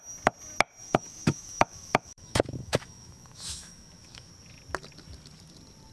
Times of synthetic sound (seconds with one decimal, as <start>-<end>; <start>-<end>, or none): 0.8-4.3